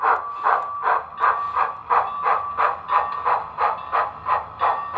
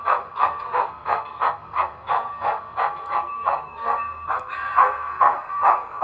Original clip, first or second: first